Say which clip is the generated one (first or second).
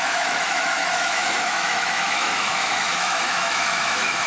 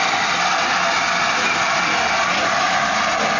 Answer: first